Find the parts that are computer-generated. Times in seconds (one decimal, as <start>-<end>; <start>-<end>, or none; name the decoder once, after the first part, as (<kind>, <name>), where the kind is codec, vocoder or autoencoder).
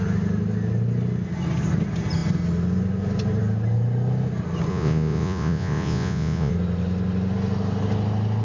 4.7-6.5 (vocoder, Vocos)